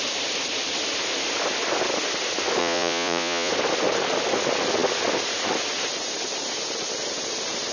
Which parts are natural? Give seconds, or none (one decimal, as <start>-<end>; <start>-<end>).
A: 0.0-2.6; 3.5-7.7